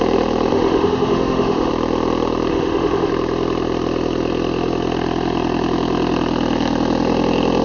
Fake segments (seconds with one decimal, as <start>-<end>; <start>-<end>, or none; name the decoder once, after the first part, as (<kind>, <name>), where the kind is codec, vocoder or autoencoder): 0.5-1.7 (autoencoder, DAC-VAE); 2.5-3.1